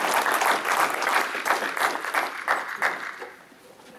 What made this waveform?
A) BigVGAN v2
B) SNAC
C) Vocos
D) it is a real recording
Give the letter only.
D